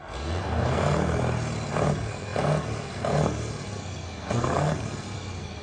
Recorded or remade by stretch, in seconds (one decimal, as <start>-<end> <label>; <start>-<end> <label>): 0.0-1.2 remade; 1.2-1.9 recorded; 1.9-5.6 remade